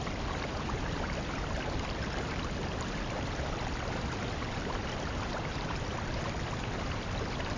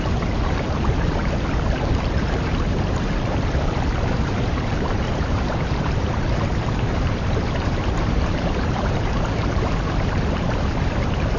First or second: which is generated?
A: second